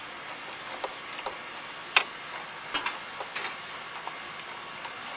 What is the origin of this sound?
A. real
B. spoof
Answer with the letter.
A